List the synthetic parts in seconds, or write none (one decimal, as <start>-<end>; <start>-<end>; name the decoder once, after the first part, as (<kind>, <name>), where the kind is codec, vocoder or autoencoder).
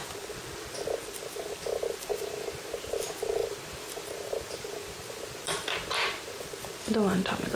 2.1-2.9 (vocoder, BigVGAN v2); 3.4-6.4